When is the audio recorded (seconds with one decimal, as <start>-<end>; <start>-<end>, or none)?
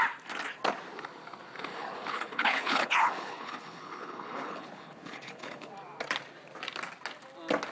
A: 0.0-1.7; 5.7-7.7